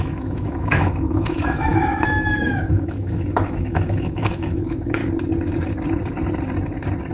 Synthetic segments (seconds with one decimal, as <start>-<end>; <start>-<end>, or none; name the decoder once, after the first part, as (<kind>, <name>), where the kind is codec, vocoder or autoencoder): 0.0-5.0 (autoencoder, DAC-VAE)